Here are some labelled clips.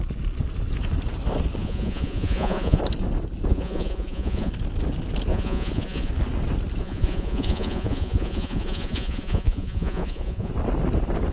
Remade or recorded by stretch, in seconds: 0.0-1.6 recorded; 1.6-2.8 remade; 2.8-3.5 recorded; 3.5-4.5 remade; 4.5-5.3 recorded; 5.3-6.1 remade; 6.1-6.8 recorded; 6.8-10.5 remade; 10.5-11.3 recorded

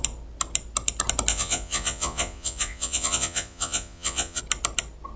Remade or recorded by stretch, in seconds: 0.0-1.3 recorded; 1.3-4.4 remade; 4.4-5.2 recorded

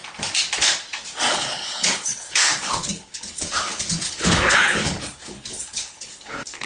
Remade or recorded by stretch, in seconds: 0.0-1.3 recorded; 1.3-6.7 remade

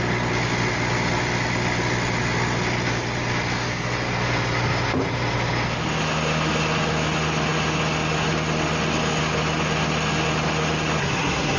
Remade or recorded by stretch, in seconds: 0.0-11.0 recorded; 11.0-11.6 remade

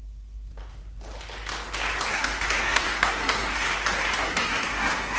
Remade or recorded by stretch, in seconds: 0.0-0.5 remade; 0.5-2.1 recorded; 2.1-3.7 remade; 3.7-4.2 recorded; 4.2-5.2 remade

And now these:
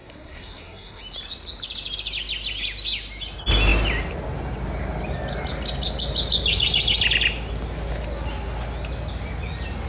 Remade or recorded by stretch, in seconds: 0.0-1.0 remade; 1.0-9.9 recorded

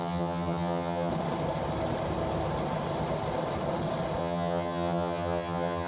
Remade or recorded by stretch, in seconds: 0.0-1.1 remade; 1.1-4.2 recorded; 4.2-5.9 remade

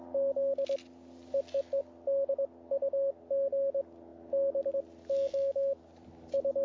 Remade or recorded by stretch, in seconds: 0.0-5.3 recorded; 5.3-5.8 remade; 5.8-6.6 recorded